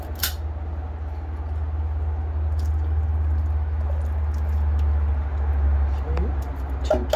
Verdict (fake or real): real